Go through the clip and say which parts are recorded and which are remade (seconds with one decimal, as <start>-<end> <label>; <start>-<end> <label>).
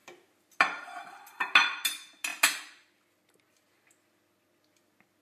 0.0-5.2 recorded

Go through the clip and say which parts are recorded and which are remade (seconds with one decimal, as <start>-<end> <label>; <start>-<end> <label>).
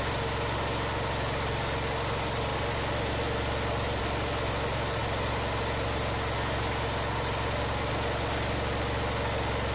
0.0-9.7 recorded